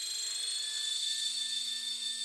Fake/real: real